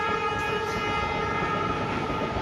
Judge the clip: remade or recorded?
recorded